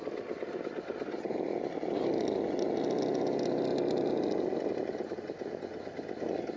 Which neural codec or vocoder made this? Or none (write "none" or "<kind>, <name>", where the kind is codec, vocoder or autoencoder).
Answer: none